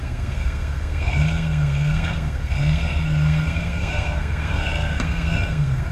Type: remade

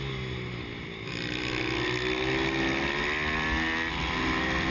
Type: recorded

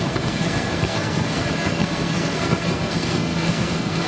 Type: remade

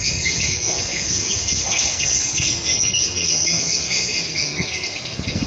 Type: remade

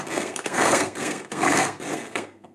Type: remade